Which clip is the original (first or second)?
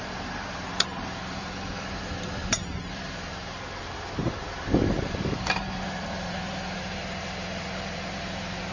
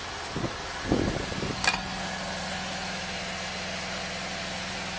second